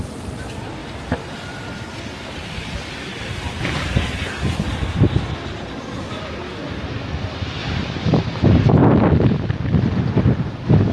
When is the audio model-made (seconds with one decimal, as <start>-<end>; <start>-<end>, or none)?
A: 7.6-8.2